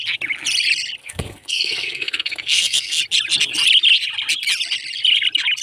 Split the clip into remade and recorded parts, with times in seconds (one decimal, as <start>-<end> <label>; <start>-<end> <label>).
0.0-1.0 recorded; 1.0-3.0 remade; 3.0-5.6 recorded